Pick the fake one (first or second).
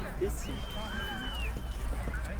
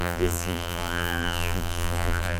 second